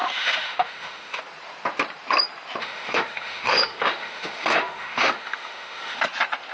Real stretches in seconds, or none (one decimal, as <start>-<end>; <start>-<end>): 1.2-2.6; 6.0-6.5